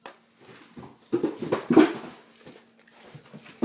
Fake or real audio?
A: real